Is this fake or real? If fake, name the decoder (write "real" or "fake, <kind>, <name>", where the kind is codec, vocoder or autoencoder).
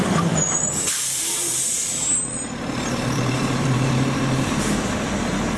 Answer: fake, vocoder, BigVGAN v2